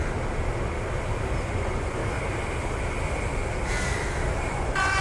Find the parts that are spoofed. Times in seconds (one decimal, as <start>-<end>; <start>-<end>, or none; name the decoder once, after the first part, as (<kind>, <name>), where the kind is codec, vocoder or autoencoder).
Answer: 1.4-2.0 (vocoder, Vocos); 4.5-5.0